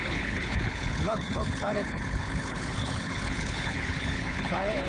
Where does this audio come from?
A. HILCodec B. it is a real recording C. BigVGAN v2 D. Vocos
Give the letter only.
A